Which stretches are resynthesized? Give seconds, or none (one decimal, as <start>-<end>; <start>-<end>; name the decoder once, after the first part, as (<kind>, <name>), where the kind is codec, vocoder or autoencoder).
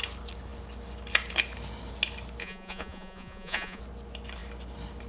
2.4-3.8 (vocoder, Vocos)